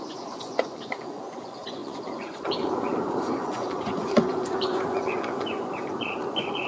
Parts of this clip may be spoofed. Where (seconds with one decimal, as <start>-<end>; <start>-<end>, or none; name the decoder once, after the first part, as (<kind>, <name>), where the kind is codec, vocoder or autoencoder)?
0.0-6.7 (vocoder, Vocos)